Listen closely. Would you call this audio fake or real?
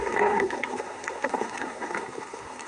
fake